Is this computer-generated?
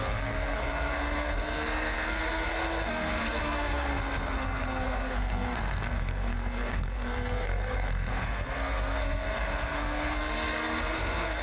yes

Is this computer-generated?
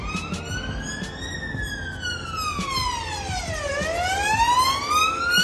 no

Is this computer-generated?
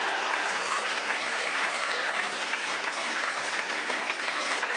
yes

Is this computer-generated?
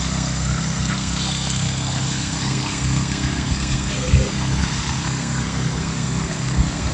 yes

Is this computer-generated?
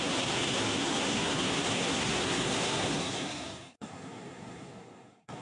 yes